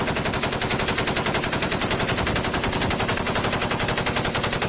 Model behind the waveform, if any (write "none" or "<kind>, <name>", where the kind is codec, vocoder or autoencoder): none